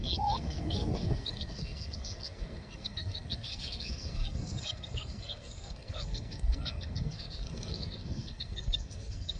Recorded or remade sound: remade